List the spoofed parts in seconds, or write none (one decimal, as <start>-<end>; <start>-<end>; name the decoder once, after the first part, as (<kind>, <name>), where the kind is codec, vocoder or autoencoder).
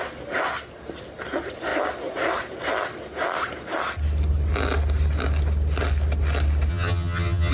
6.7-7.5 (vocoder, HiFi-GAN)